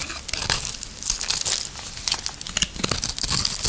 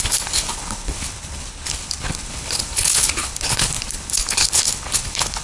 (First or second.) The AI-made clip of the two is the second